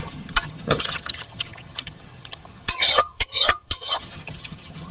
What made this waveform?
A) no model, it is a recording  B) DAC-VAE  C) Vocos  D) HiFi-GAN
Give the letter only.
D